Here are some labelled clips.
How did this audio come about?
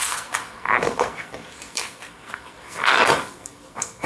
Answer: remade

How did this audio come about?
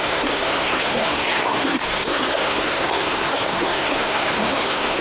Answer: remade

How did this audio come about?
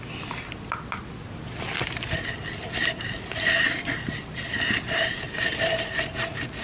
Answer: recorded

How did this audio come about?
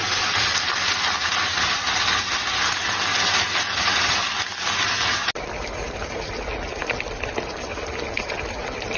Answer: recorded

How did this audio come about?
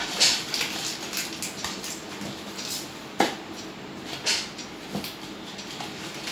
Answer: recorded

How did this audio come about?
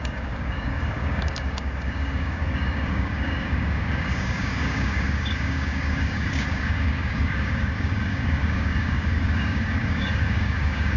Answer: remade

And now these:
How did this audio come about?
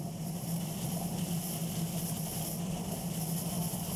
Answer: recorded